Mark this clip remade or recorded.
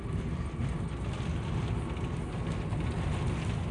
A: recorded